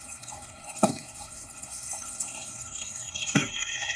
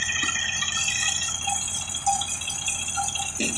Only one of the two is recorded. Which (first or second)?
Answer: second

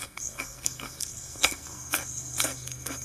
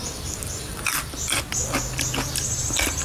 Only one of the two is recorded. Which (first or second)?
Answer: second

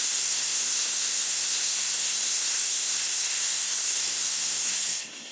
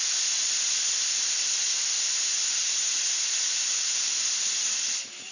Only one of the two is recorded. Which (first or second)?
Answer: second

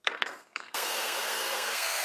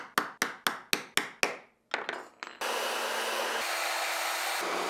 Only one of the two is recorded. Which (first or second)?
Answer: second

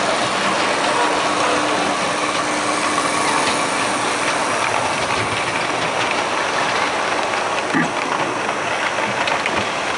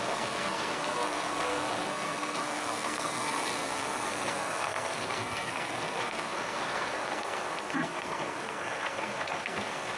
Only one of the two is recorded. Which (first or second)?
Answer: first